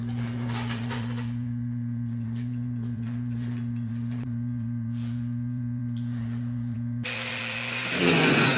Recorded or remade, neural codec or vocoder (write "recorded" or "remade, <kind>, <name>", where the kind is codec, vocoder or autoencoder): remade, vocoder, Vocos